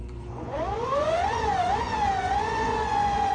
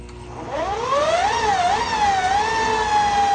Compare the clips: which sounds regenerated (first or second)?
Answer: first